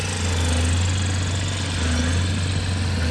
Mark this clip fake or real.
real